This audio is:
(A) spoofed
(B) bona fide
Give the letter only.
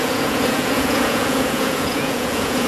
A